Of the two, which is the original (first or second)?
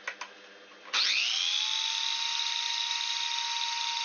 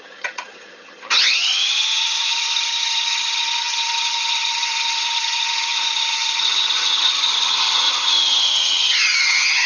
first